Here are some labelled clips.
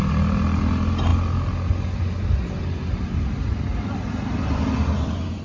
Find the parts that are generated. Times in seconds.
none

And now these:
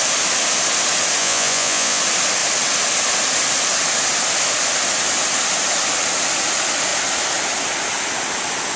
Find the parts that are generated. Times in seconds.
1.2-2.0 (vocoder, Vocos)

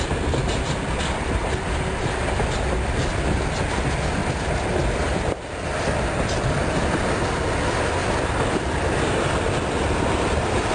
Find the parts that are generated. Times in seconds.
none

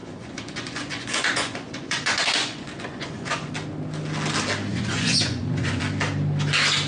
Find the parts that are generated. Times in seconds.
0.0-3.5 (vocoder, Vocos); 4.7-5.8

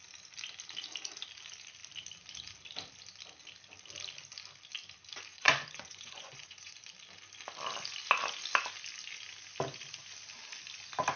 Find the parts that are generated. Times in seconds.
5.3-6.8 (vocoder, Vocos)